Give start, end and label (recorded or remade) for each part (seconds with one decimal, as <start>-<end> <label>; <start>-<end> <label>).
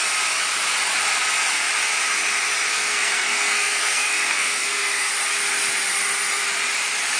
0.0-2.7 recorded; 2.7-5.1 remade; 5.1-7.2 recorded